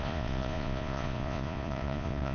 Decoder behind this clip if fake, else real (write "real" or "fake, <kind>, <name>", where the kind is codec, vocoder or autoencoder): fake, vocoder, Vocos